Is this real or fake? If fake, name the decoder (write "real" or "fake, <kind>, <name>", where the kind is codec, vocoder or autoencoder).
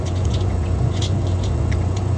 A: fake, vocoder, Vocos